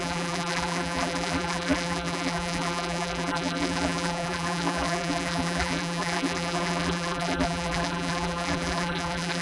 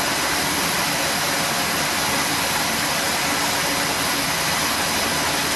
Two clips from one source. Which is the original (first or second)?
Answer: second